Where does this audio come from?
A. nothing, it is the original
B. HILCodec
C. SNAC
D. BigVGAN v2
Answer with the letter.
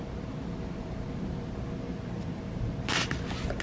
A